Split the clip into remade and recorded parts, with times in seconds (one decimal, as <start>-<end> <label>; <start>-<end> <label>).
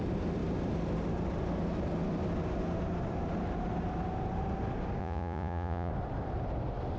0.0-5.0 recorded; 5.0-5.9 remade; 5.9-7.0 recorded